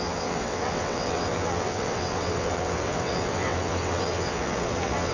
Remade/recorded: remade